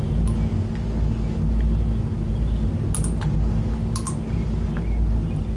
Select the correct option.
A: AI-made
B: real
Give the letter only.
B